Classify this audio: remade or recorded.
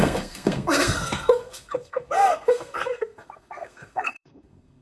remade